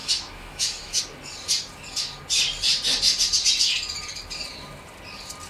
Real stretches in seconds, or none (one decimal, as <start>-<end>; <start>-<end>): 1.0-5.5